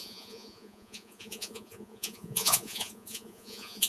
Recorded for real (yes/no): no